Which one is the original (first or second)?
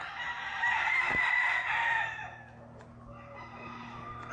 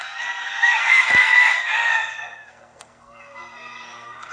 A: first